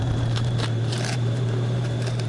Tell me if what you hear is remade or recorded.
remade